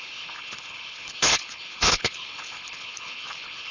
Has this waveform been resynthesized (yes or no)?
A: yes